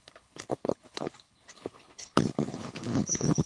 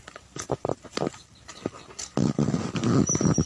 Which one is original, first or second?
second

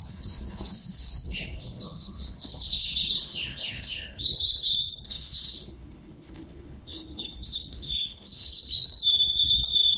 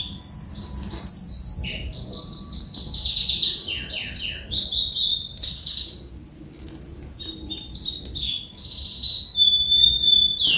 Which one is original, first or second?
second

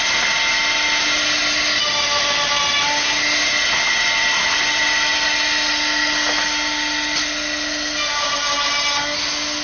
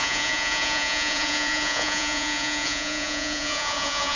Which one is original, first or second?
first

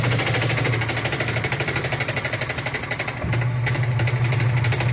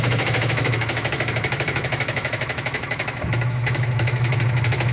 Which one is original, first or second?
first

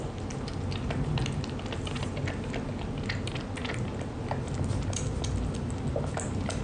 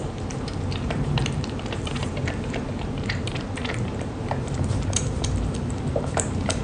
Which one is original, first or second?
first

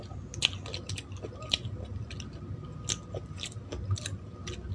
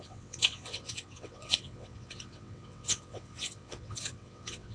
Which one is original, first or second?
first